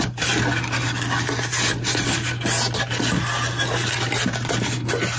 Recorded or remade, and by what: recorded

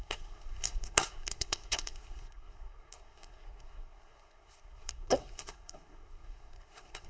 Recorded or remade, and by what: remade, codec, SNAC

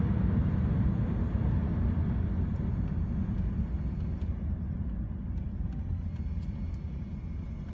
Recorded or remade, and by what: recorded